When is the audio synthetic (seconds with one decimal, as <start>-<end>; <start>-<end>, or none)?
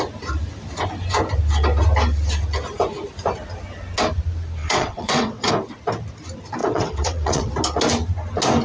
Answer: 4.6-5.5; 6.6-7.5